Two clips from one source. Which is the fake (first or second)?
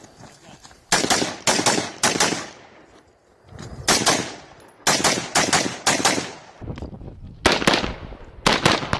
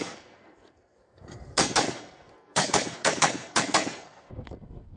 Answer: second